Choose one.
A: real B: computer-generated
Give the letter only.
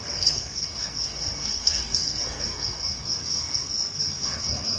B